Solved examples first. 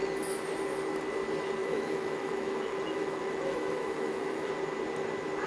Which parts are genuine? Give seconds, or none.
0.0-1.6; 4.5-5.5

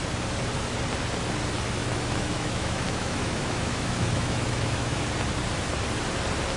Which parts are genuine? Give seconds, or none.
0.0-1.8; 5.0-6.6

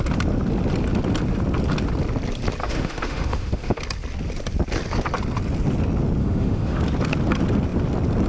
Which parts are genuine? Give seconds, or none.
0.0-2.6; 3.8-6.2; 6.8-8.3

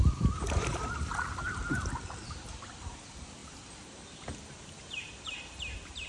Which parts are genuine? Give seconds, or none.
0.0-6.1

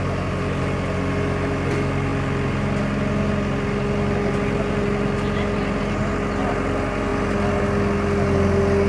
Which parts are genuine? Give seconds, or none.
0.0-8.9

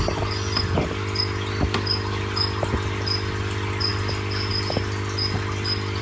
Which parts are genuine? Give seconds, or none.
0.0-6.0

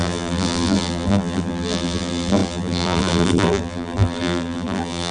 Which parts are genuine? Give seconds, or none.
none